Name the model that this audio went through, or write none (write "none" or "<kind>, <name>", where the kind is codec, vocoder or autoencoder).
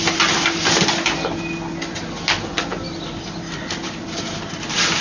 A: none